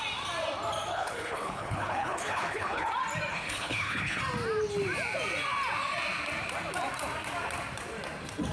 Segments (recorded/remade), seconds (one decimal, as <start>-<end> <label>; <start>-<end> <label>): 0.0-0.9 recorded; 0.9-2.9 remade; 2.9-3.3 recorded; 3.3-4.2 remade; 4.2-8.5 recorded